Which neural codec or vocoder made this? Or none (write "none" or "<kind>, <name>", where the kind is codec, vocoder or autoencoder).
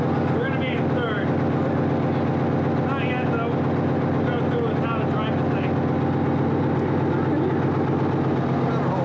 none